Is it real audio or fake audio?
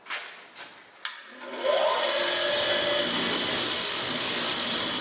real